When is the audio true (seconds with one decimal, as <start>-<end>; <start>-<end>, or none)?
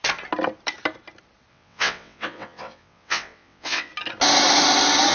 0.0-1.5; 3.9-5.1